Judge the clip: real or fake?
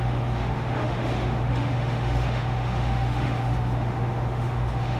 fake